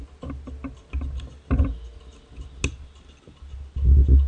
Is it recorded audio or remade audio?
recorded